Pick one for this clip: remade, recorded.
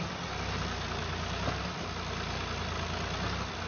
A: recorded